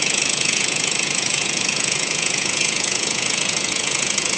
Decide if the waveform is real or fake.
fake